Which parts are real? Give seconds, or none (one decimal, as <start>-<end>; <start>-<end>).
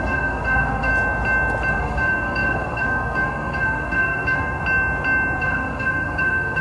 0.9-1.7; 4.6-5.4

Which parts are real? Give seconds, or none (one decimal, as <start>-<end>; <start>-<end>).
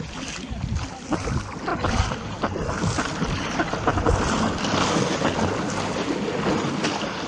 0.0-7.3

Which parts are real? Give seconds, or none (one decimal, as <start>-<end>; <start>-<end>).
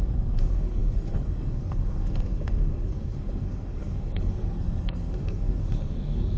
none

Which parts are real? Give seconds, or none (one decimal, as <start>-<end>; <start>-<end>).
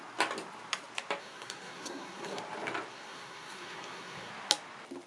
0.0-1.2; 2.4-2.9; 4.3-5.1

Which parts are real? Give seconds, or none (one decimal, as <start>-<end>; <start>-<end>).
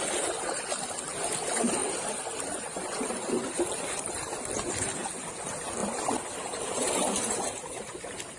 0.0-8.4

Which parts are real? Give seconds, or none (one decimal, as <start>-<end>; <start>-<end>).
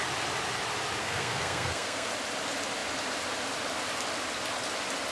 0.0-1.0; 2.1-5.1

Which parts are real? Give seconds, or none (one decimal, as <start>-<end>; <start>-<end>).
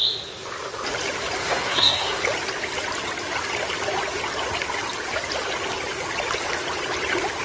0.0-1.4; 2.2-7.4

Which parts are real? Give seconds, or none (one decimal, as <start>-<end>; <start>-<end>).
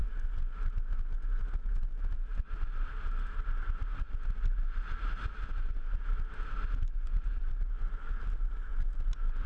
0.0-9.5